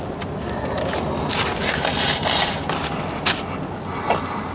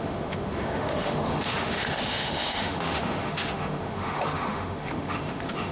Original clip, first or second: first